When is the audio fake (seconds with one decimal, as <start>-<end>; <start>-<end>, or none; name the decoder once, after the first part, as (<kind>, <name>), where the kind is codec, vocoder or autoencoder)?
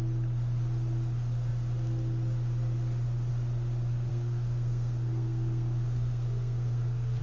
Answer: 4.1-7.2 (codec, SNAC)